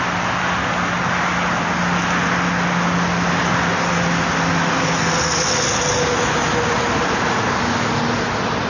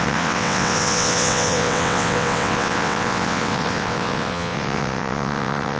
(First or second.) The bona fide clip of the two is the first